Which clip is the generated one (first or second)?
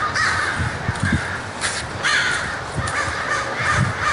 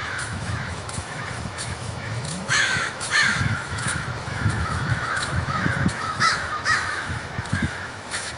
second